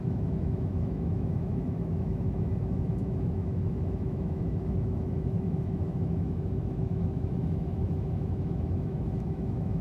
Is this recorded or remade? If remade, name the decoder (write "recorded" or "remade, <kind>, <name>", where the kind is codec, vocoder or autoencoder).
remade, autoencoder, DAC-VAE